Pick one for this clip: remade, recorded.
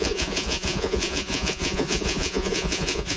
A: remade